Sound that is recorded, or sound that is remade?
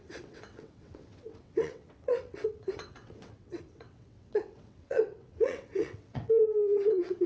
remade